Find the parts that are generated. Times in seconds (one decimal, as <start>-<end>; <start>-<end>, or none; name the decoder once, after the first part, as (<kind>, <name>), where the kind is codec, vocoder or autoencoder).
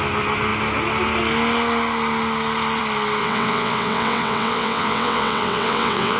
3.2-6.2 (vocoder, WaveNeXt)